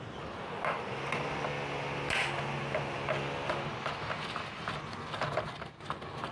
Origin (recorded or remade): recorded